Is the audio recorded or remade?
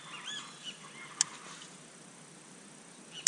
recorded